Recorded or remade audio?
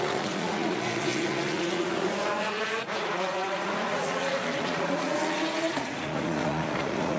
remade